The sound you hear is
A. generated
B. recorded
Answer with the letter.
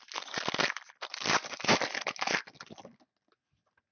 B